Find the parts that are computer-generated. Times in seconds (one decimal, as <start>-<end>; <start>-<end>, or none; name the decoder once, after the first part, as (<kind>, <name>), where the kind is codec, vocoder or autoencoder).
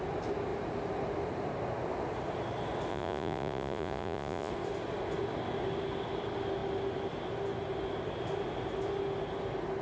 2.9-4.5 (vocoder, Vocos)